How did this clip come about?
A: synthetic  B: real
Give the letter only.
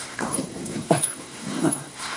A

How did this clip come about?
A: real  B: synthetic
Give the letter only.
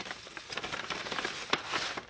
A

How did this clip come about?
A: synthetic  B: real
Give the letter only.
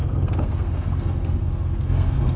A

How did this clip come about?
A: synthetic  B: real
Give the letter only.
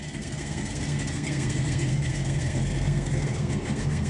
A